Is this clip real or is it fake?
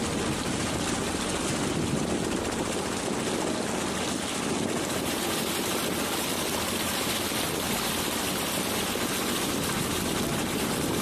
real